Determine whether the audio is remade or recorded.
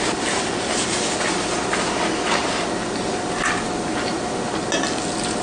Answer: recorded